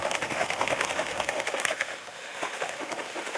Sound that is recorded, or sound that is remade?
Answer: remade